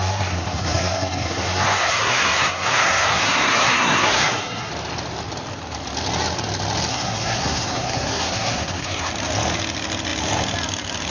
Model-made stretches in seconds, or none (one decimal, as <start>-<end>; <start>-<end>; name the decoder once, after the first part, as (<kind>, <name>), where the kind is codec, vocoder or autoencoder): 0.0-4.7 (codec, SNAC); 6.9-9.1